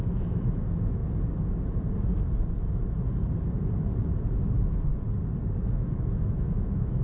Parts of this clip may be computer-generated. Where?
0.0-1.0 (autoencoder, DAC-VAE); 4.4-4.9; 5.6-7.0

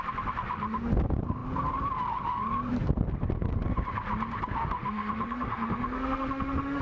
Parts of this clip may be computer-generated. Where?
0.4-0.9 (autoencoder, DAC-VAE); 4.6-6.8

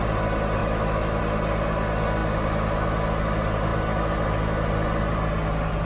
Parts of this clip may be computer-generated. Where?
0.6-1.2 (autoencoder, DAC-VAE)